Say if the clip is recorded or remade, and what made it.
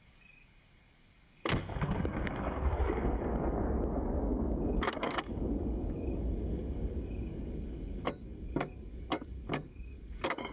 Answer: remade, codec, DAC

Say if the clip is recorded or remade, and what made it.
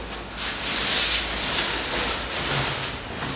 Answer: recorded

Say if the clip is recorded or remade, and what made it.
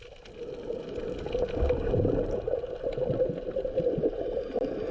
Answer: recorded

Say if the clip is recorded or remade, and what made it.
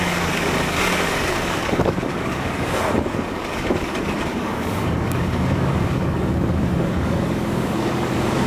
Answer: remade, codec, DAC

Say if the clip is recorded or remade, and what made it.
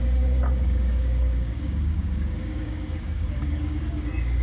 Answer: remade, codec, DAC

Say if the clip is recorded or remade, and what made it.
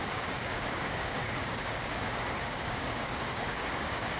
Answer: remade, codec, DAC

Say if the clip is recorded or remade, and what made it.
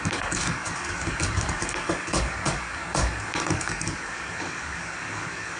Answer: remade, codec, DAC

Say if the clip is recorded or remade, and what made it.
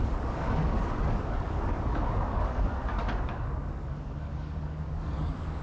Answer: remade, codec, DAC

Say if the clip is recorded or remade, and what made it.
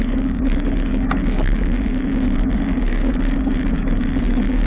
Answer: remade, codec, DAC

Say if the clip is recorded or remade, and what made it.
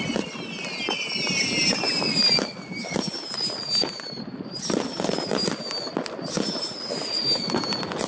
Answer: recorded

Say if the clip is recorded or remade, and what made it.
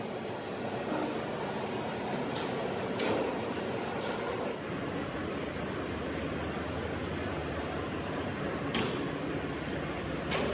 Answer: recorded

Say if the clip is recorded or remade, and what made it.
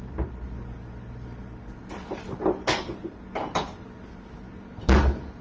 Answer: recorded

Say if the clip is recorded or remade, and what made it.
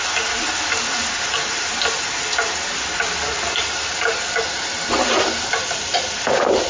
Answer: recorded